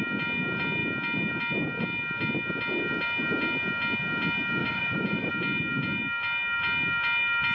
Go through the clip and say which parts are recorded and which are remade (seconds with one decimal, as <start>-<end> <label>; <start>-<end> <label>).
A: 0.0-4.6 recorded; 4.6-5.3 remade; 5.3-7.5 recorded